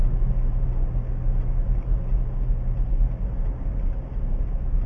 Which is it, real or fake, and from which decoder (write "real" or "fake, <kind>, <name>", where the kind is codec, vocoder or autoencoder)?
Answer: real